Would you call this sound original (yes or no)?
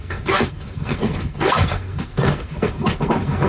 no